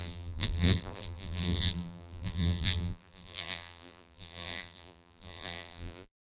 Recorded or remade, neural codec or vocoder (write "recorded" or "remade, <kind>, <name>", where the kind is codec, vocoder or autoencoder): remade, vocoder, BigVGAN v2